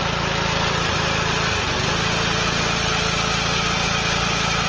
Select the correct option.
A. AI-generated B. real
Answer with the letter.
B